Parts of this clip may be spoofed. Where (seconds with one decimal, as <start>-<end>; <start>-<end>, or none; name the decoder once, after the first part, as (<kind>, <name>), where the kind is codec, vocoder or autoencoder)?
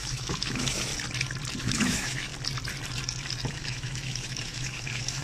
0.0-0.9 (autoencoder, DAC-VAE); 1.6-2.3; 3.5-5.2